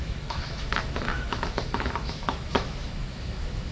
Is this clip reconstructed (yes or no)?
yes